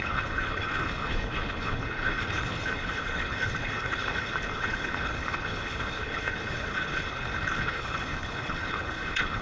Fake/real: fake